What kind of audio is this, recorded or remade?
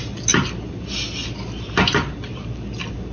recorded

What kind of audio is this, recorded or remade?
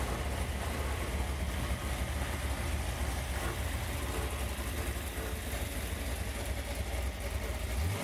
recorded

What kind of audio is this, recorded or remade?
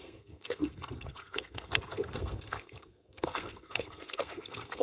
remade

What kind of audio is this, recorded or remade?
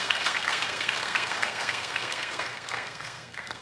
remade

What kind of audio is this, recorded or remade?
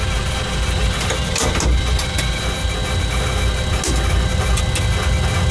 recorded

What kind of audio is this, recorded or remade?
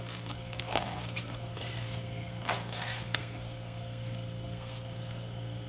remade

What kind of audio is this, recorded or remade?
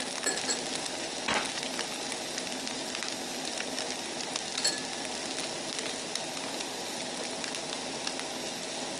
recorded